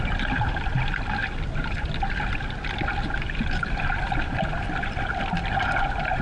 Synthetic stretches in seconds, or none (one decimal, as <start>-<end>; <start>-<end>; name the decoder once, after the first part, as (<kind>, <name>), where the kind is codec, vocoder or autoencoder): 1.2-1.8 (vocoder, BigVGAN v2)